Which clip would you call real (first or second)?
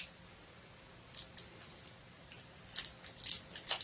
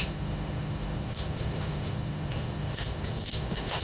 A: first